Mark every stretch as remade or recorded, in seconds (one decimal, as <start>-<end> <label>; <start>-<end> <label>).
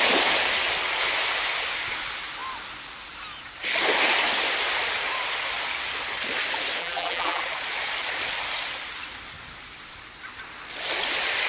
0.0-6.8 recorded; 6.8-7.4 remade; 7.4-11.5 recorded